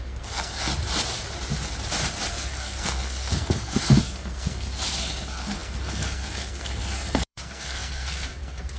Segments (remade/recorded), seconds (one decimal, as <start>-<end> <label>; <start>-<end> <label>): 0.0-0.7 remade; 0.7-2.3 recorded; 2.3-8.8 remade